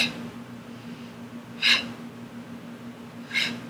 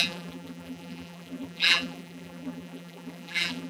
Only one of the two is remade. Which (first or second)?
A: second